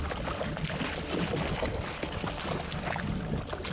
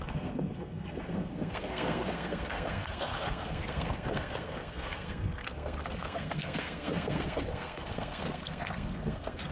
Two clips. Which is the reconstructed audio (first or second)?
second